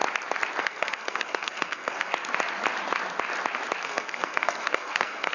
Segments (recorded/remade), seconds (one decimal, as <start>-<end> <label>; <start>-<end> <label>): 0.0-0.6 recorded; 0.6-2.1 remade; 2.1-3.8 recorded; 3.8-5.3 remade